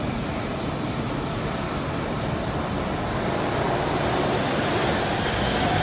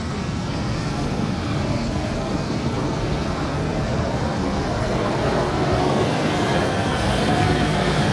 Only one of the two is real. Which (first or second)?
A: first